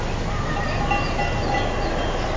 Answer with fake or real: real